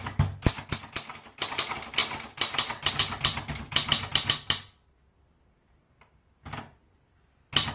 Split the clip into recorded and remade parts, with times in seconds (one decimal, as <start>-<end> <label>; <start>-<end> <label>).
0.0-2.0 recorded; 2.0-2.9 remade; 2.9-7.7 recorded